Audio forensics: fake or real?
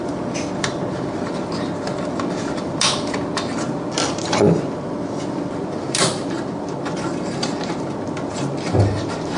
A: real